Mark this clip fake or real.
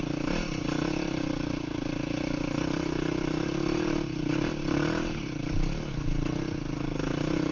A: real